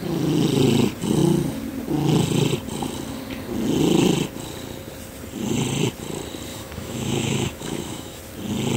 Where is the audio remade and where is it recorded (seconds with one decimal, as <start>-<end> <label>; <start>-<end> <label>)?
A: 0.0-6.5 recorded; 6.5-8.2 remade; 8.2-8.8 recorded